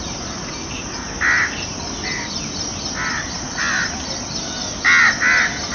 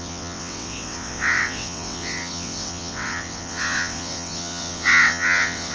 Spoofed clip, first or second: second